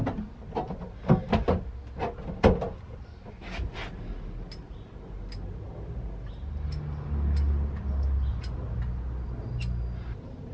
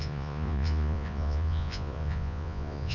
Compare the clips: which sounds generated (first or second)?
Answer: second